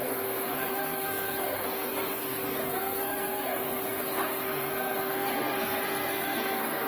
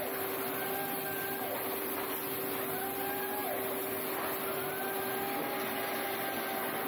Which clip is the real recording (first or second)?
second